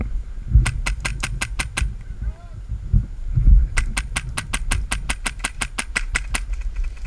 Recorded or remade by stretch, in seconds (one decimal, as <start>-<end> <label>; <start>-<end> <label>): 0.0-7.1 recorded